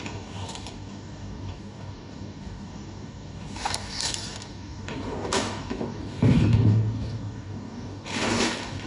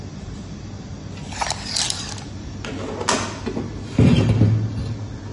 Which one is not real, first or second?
first